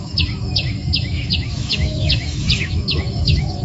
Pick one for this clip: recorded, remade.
remade